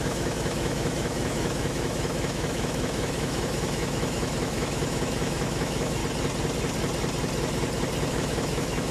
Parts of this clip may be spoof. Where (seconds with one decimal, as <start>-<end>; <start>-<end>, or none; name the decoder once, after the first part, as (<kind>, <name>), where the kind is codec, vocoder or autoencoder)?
0.0-6.0 (autoencoder, DAC-VAE); 8.1-8.9